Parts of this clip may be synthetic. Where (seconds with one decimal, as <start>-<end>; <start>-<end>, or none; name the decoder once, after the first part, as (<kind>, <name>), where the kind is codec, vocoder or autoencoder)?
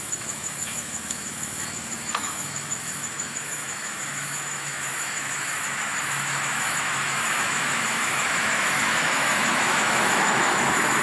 0.0-11.0 (autoencoder, DAC-VAE)